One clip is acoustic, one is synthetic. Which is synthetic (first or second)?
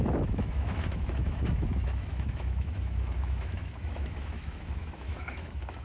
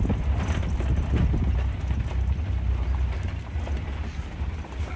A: first